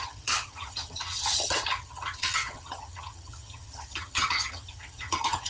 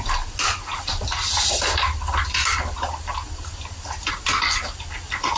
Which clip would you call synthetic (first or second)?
first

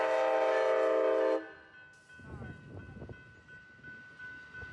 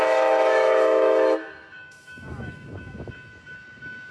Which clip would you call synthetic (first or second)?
second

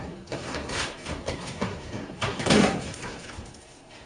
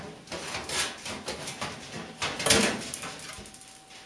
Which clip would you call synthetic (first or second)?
first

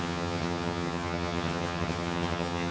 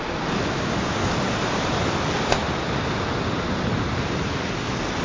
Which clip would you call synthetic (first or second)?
first